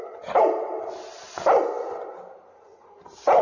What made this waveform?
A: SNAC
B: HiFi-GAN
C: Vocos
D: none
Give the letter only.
D